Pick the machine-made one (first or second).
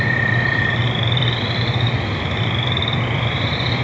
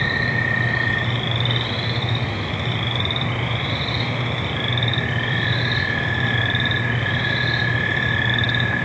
first